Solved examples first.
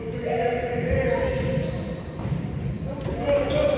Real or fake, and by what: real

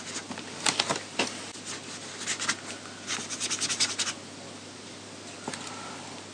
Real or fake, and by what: real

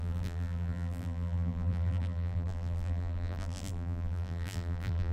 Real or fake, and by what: fake, vocoder, BigVGAN v2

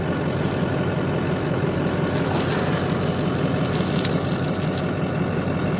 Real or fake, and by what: real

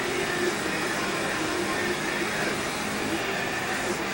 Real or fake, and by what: real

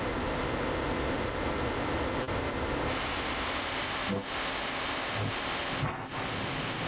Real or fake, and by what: real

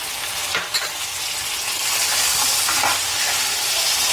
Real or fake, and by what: real